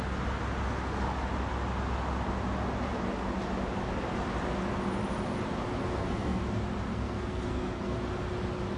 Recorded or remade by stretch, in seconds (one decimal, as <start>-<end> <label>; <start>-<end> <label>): 0.0-5.8 recorded; 5.8-6.4 remade; 6.4-6.9 recorded; 6.9-8.0 remade; 8.0-8.8 recorded